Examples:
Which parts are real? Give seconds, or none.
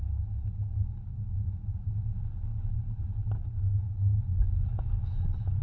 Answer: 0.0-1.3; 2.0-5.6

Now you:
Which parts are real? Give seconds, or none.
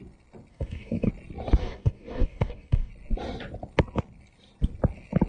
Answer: 0.0-0.5; 1.1-1.6; 2.9-5.3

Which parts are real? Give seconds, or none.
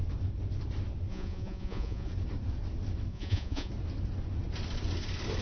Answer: 0.0-1.1; 2.1-3.1; 3.7-5.4